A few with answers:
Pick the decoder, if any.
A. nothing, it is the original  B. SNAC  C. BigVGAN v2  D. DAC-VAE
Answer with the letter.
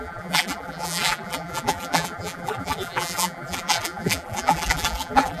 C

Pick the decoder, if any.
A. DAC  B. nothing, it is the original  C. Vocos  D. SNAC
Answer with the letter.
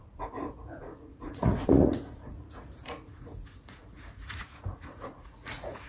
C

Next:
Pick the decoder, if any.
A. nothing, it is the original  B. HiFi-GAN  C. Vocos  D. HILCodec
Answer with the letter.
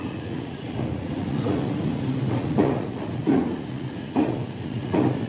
C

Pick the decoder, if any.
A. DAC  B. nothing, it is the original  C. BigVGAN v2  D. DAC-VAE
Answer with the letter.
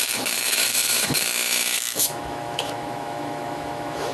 D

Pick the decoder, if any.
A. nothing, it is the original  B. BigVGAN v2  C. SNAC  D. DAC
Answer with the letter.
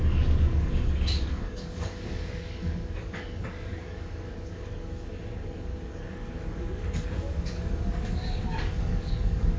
D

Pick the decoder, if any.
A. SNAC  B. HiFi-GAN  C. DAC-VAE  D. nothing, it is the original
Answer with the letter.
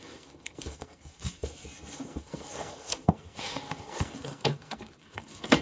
A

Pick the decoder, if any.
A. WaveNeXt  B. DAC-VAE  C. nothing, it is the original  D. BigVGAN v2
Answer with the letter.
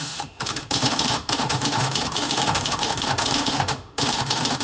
B